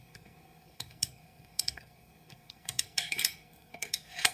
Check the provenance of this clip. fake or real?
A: fake